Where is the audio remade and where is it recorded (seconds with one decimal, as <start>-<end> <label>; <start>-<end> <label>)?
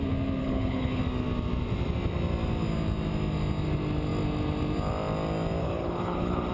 0.0-0.4 recorded; 0.4-1.0 remade; 1.0-5.6 recorded; 5.6-6.5 remade